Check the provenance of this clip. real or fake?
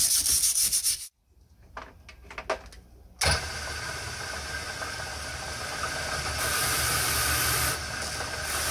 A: real